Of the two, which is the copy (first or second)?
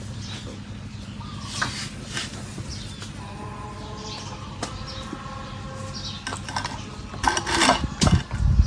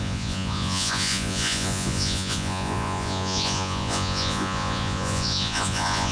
second